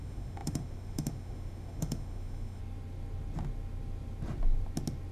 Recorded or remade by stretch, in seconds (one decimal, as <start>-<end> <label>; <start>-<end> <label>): 0.0-2.6 remade; 2.6-5.1 recorded